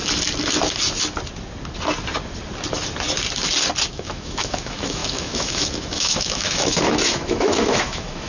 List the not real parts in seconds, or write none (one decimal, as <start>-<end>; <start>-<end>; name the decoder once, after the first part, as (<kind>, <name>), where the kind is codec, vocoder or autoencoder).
3.9-8.3 (autoencoder, DAC-VAE)